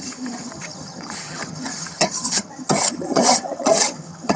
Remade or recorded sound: remade